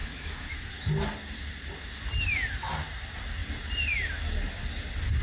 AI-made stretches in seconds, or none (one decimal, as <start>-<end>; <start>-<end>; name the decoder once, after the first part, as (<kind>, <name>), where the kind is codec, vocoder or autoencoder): 0.0-0.7 (autoencoder, DAC-VAE)